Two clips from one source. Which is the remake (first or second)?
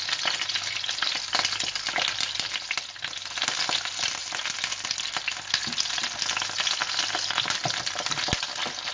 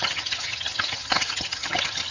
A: second